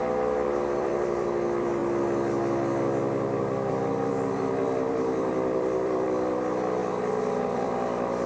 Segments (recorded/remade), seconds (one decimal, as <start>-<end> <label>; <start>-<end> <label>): 0.0-1.8 remade; 1.8-3.7 recorded; 3.7-8.3 remade